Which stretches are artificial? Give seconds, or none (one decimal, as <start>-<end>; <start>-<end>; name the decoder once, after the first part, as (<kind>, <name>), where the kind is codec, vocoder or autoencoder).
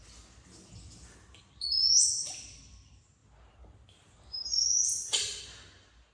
none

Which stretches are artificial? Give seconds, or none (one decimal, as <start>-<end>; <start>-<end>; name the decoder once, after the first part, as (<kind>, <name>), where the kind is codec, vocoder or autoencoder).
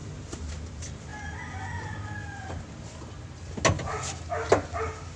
none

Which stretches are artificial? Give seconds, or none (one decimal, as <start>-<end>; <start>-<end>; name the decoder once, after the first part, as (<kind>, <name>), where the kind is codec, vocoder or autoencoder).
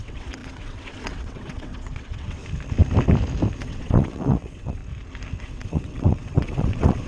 0.0-2.4 (vocoder, WaveNeXt); 3.6-4.8; 5.4-7.1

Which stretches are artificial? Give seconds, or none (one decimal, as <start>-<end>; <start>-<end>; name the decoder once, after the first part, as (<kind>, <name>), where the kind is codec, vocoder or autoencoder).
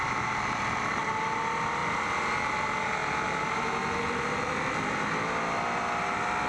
none